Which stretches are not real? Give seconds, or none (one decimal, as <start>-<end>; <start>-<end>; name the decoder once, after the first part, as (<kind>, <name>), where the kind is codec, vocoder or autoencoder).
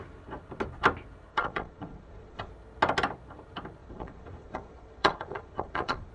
1.3-2.5 (vocoder, Vocos); 3.8-6.1